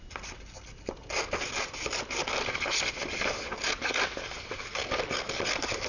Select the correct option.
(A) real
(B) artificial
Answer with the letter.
A